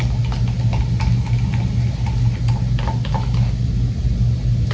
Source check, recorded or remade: recorded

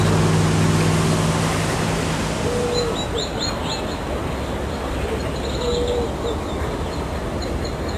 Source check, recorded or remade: recorded